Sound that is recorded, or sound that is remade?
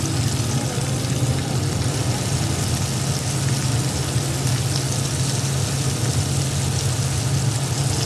recorded